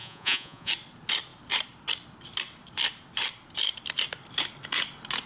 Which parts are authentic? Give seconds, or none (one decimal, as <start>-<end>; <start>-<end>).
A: 0.7-5.3